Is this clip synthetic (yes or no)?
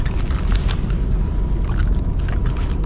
no